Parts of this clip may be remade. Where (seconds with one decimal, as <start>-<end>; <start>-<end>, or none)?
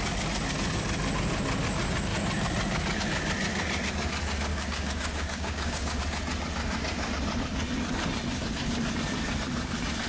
4.5-6.0